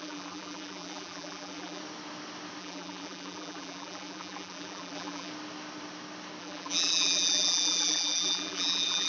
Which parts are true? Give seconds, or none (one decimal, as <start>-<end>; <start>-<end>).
1.8-2.6; 5.3-6.4